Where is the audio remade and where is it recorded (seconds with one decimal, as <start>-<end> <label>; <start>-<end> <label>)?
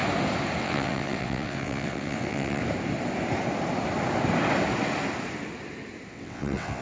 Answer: 0.0-0.6 recorded; 0.6-2.6 remade; 2.6-6.1 recorded; 6.1-6.8 remade